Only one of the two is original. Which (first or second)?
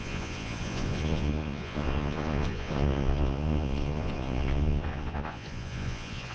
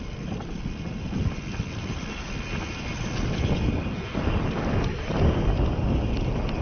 second